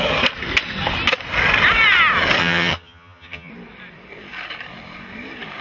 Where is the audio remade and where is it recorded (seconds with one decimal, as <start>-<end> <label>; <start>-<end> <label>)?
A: 0.0-2.4 recorded; 2.4-3.5 remade; 3.5-5.6 recorded